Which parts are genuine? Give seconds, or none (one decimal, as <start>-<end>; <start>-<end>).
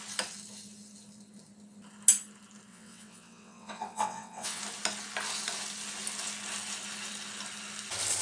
0.0-2.7; 4.6-8.2